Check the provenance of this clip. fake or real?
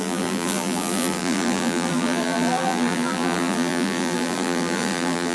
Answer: fake